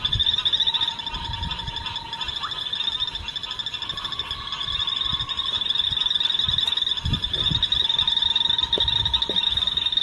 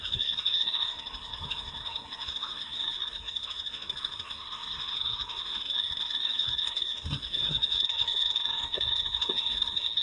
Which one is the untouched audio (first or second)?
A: first